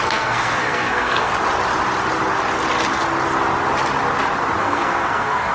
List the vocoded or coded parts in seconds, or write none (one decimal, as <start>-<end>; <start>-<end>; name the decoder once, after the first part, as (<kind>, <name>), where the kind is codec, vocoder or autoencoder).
0.0-1.3 (codec, SNAC); 4.6-5.5